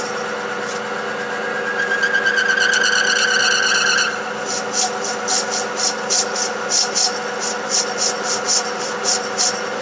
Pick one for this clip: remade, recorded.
recorded